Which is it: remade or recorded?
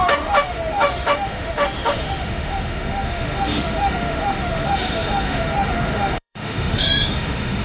remade